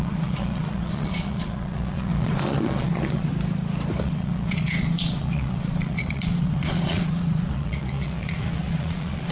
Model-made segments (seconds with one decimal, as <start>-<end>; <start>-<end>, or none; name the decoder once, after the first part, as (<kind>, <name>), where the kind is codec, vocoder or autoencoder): 0.0-3.3 (vocoder, Vocos); 4.0-9.3